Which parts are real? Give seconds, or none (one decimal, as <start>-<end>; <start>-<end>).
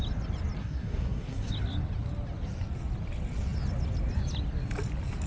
0.0-0.6; 1.5-5.3